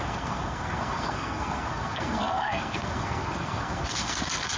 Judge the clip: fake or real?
fake